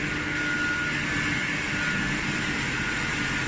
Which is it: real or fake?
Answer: real